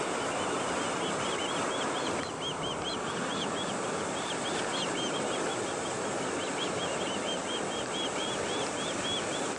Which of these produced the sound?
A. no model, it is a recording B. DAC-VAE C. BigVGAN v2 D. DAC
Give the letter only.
A